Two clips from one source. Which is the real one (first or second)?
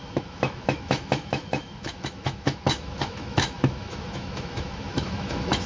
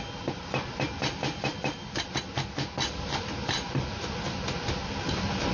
second